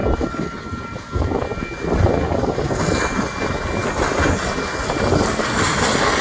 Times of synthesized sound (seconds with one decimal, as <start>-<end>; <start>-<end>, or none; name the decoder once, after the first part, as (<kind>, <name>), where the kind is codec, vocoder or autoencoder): none